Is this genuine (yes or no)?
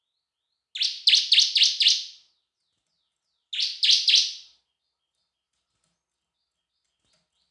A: yes